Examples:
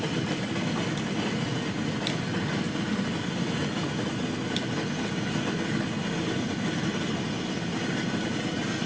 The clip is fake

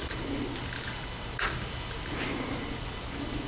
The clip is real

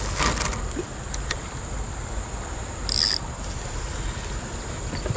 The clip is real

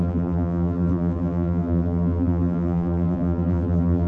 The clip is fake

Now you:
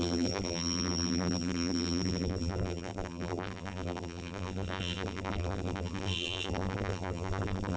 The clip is fake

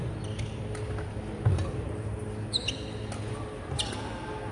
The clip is real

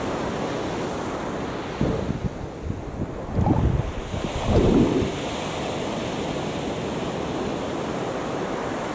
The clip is real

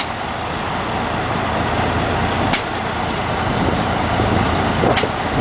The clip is fake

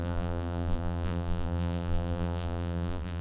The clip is fake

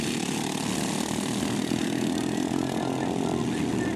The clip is real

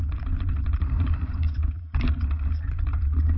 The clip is fake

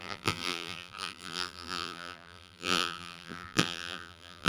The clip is fake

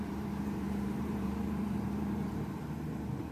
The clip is fake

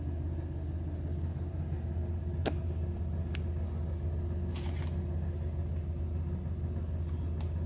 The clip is real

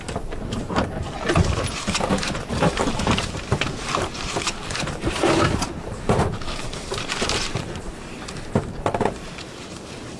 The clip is fake